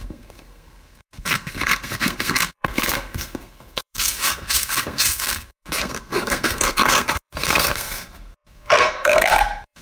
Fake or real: fake